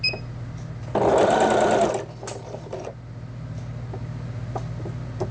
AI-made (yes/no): no